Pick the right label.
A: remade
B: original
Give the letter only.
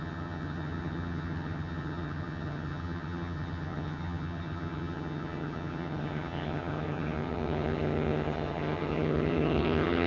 A